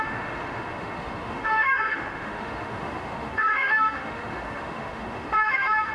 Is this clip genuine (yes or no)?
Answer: no